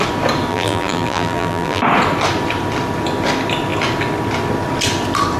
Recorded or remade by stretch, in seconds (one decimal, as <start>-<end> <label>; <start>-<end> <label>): 0.0-0.5 recorded; 0.5-1.8 remade; 1.8-5.4 recorded